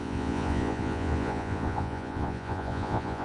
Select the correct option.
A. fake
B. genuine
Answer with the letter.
A